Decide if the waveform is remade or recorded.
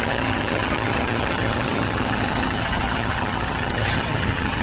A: remade